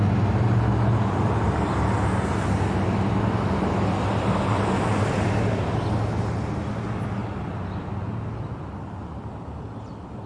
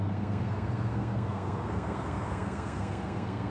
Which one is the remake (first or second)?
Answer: second